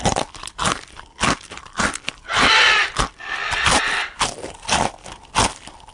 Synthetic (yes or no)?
yes